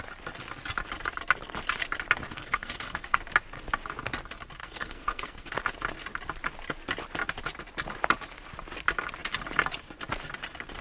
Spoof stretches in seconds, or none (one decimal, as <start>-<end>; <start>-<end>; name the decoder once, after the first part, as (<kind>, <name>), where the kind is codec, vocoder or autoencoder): 2.3-3.2 (codec, SNAC); 4.6-5.5